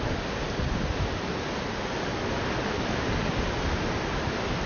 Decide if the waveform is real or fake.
real